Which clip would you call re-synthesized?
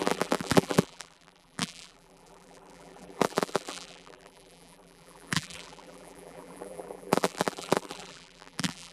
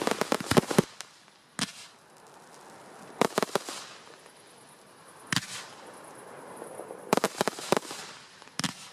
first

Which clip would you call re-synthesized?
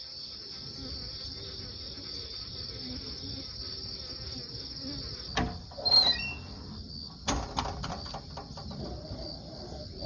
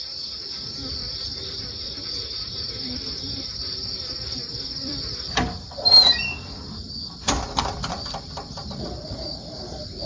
second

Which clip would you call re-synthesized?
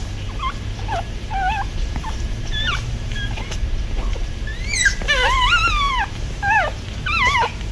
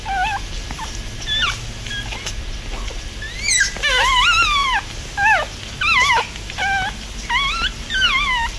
first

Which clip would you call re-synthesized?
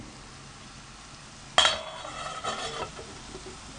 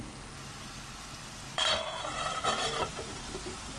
second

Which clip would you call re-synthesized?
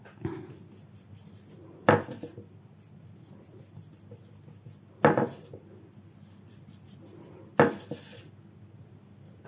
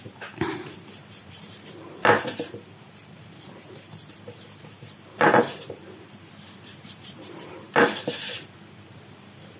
second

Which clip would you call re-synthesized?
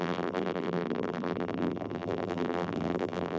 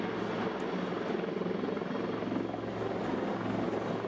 first